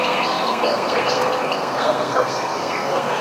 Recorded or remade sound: remade